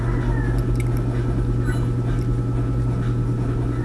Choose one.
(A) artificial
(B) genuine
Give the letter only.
B